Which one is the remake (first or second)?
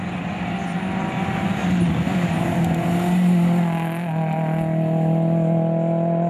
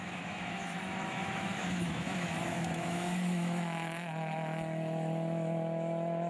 second